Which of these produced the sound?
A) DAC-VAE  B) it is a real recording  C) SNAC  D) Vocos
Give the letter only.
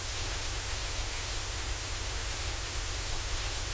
C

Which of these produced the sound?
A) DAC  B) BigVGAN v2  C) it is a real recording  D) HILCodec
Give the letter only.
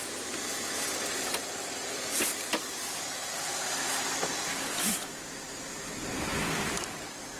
B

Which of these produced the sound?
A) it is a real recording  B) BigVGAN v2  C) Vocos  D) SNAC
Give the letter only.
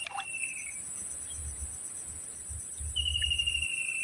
A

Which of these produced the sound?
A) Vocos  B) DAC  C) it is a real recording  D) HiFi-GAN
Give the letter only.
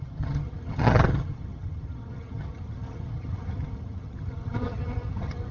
D